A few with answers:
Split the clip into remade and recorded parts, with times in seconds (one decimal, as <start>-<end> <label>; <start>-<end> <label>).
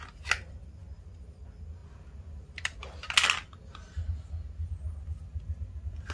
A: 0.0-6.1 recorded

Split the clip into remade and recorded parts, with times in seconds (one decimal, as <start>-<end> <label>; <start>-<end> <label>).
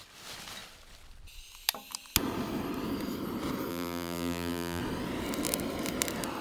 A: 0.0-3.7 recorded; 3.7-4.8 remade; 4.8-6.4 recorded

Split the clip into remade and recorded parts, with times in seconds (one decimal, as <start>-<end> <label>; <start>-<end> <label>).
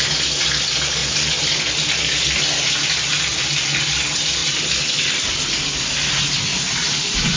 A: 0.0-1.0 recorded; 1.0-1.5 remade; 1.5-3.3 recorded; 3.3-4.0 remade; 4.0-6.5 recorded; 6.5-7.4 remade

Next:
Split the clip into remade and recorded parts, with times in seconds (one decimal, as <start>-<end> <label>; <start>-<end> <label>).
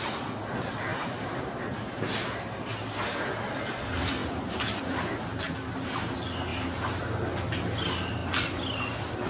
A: 0.0-0.9 recorded; 0.9-3.5 remade; 3.5-4.2 recorded; 4.2-4.8 remade; 4.8-6.5 recorded; 6.5-7.0 remade; 7.0-9.3 recorded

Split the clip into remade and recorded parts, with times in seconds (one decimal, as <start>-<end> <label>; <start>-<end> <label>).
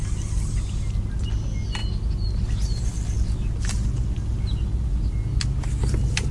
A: 0.0-6.3 recorded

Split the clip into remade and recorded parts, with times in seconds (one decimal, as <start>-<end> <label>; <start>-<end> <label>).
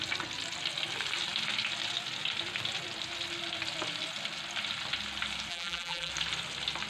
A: 0.0-5.5 recorded; 5.5-6.1 remade; 6.1-6.9 recorded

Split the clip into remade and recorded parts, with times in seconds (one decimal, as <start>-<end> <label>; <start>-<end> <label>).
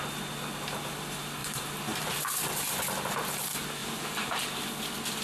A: 0.0-1.4 recorded; 1.4-2.1 remade; 2.1-3.8 recorded; 3.8-4.3 remade; 4.3-5.2 recorded